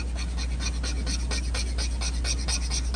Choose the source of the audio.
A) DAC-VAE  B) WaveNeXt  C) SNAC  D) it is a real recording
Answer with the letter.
D